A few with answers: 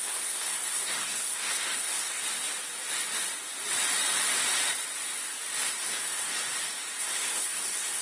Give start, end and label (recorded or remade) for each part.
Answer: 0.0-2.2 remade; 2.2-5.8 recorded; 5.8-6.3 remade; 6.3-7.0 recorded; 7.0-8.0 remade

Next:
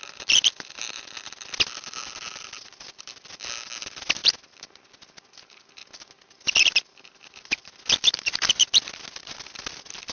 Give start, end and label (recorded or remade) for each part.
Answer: 0.0-10.1 recorded

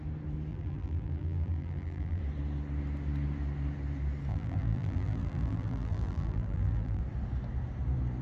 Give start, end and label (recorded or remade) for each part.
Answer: 0.0-0.5 recorded; 0.5-2.2 remade; 2.2-4.3 recorded; 4.3-7.0 remade; 7.0-8.2 recorded

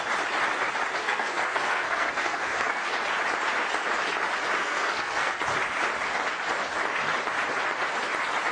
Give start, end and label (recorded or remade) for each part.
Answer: 0.0-1.0 recorded; 1.0-2.9 remade; 2.9-4.6 recorded; 4.6-5.4 remade; 5.4-8.5 recorded

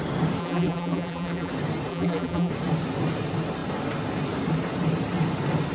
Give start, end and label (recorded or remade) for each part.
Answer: 0.0-0.4 recorded; 0.4-1.5 remade; 1.5-1.9 recorded; 1.9-2.5 remade; 2.5-5.7 recorded

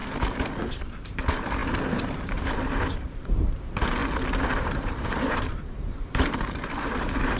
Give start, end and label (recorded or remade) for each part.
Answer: 0.0-0.7 recorded; 0.7-4.0 remade; 4.0-4.6 recorded; 4.6-7.4 remade